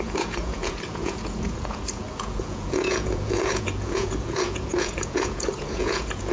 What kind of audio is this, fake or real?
fake